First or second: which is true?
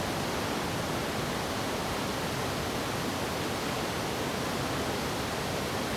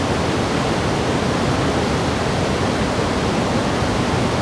first